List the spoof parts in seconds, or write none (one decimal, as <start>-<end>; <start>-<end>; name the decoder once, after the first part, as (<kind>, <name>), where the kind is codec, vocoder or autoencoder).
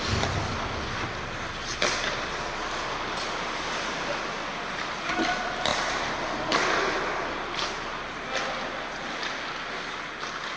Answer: none